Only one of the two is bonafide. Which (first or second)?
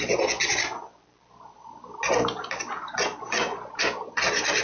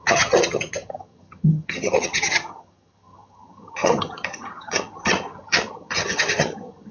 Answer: first